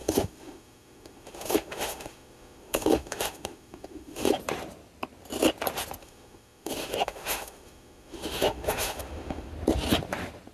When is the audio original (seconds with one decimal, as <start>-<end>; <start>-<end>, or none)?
4.3-6.0; 9.5-10.5